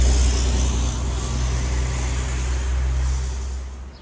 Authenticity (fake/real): real